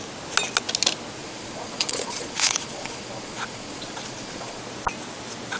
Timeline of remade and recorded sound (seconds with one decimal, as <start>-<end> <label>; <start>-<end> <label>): 0.0-1.2 recorded; 1.2-4.6 remade; 4.6-5.6 recorded

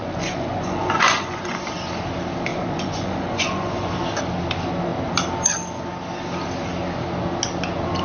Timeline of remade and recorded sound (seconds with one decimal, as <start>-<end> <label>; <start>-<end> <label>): 0.0-1.6 remade; 1.6-2.5 recorded; 2.5-3.9 remade; 3.9-8.0 recorded

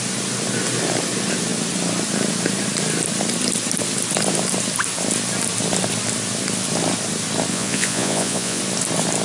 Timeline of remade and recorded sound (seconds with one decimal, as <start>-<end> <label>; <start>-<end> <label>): 0.0-7.5 recorded; 7.5-8.6 remade; 8.6-9.2 recorded

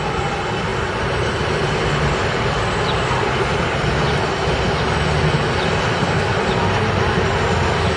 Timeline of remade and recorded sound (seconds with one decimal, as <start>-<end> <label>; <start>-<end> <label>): 0.0-8.0 recorded

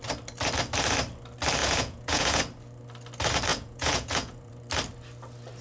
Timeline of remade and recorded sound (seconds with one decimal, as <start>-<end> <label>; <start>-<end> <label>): 0.0-1.6 recorded; 1.6-2.4 remade; 2.4-3.5 recorded; 3.5-4.5 remade; 4.5-5.6 recorded

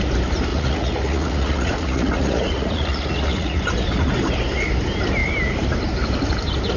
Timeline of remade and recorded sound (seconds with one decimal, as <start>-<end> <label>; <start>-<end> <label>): 0.0-0.5 recorded; 0.5-3.6 remade; 3.6-6.8 recorded

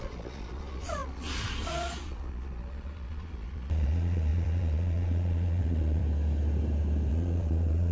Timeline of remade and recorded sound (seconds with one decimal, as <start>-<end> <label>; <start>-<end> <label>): 0.0-6.0 remade; 6.0-7.1 recorded; 7.1-7.9 remade

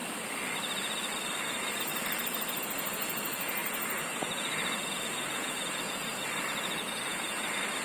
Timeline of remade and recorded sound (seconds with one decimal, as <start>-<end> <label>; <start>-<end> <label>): 0.0-1.4 recorded; 1.4-1.9 remade; 1.9-2.6 recorded; 2.6-7.8 remade